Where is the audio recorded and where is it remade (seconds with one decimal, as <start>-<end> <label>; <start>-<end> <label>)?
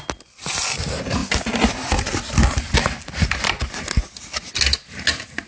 0.0-5.5 recorded